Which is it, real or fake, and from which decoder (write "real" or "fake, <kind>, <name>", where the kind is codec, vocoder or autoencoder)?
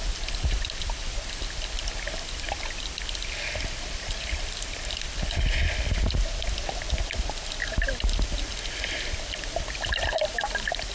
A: real